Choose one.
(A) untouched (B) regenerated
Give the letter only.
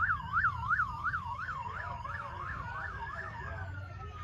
B